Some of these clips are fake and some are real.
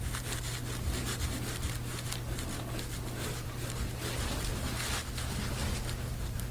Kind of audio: real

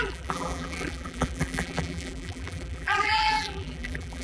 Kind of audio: fake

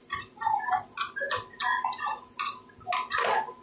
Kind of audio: real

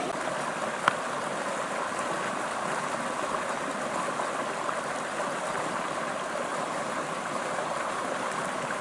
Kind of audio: real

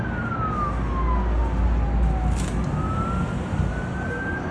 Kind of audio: real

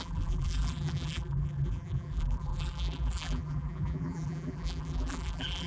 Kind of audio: fake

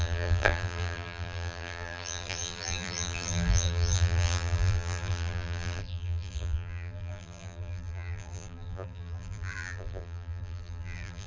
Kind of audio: fake